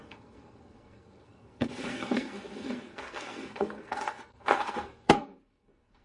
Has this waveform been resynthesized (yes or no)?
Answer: yes